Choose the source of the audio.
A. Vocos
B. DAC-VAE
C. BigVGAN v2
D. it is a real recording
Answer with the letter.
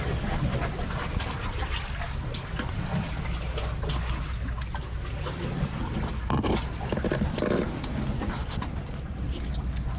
D